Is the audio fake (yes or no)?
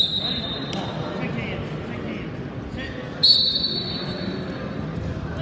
no